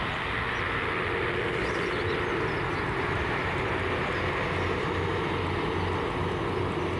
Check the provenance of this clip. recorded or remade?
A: recorded